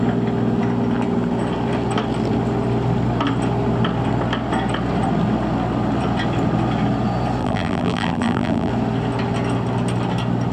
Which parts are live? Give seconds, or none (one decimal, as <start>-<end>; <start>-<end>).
0.0-7.4; 8.7-10.5